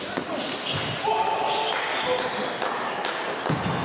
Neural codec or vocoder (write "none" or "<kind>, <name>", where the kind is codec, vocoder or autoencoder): none